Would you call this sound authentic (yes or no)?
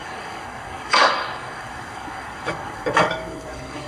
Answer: no